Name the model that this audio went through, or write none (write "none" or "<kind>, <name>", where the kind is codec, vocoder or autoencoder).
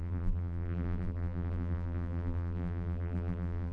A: vocoder, BigVGAN v2